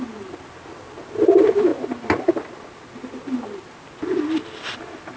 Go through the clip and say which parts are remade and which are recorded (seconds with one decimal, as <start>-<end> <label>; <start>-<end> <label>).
0.0-5.2 recorded